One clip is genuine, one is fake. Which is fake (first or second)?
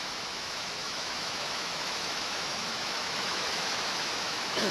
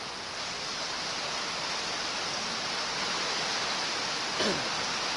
first